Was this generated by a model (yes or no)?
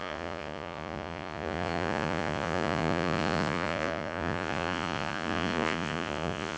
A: yes